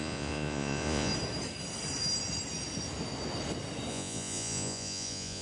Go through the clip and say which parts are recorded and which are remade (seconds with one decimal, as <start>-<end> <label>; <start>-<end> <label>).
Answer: 0.0-1.1 remade; 1.1-3.9 recorded; 3.9-5.4 remade

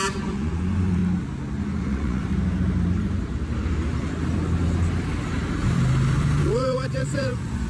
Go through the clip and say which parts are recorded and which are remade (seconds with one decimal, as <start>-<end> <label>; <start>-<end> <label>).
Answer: 0.0-1.0 remade; 1.0-1.6 recorded; 1.6-2.3 remade; 2.3-6.4 recorded; 6.4-7.7 remade